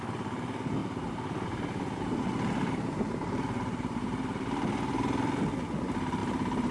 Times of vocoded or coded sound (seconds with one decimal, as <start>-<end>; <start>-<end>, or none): 0.8-2.0; 2.6-4.2; 6.2-6.7